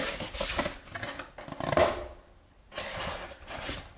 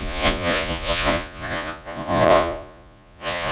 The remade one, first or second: second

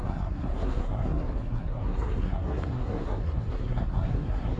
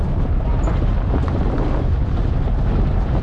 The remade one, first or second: first